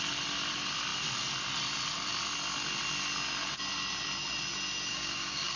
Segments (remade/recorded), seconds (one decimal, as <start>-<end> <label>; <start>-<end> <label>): 0.0-4.9 recorded; 4.9-5.6 remade